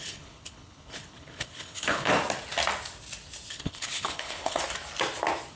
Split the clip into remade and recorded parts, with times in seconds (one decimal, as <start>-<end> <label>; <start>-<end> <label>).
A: 0.0-2.1 remade; 2.1-3.5 recorded; 3.5-4.6 remade; 4.6-5.5 recorded